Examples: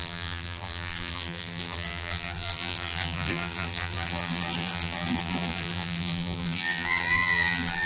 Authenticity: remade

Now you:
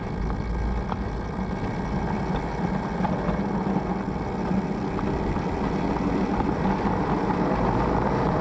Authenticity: recorded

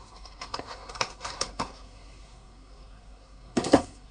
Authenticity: remade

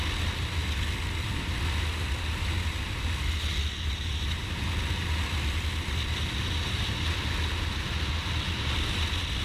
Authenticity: recorded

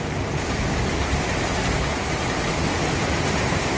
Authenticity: recorded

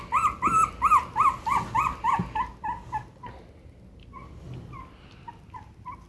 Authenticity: recorded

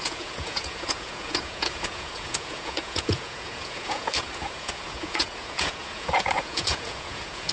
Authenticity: remade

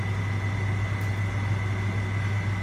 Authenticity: recorded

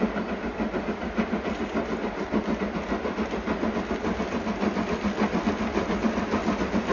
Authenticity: recorded